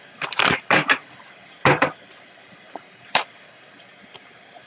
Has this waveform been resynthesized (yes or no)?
yes